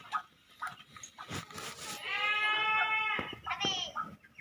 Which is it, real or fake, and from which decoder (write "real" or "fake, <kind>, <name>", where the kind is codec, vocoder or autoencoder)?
real